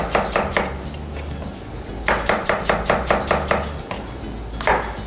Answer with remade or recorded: recorded